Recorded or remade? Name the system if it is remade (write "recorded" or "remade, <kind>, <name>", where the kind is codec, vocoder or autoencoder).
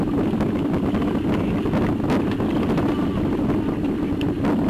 recorded